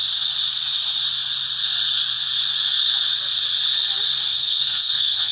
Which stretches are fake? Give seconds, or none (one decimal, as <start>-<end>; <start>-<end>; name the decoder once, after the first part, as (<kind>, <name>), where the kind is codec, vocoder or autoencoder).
4.3-5.3 (codec, HILCodec)